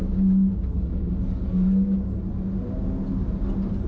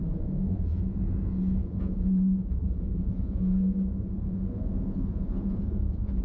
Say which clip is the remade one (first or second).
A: second